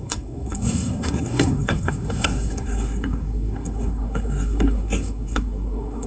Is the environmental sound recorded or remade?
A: remade